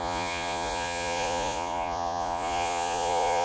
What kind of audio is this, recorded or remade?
remade